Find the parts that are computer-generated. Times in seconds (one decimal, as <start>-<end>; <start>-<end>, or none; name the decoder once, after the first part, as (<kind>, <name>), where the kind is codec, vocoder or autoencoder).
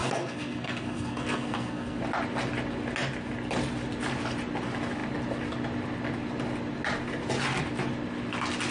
0.0-2.0 (codec, SNAC)